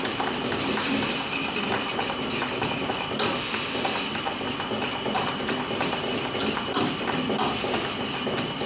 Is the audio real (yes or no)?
yes